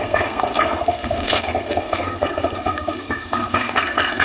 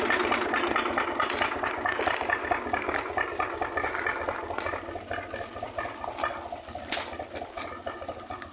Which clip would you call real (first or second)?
second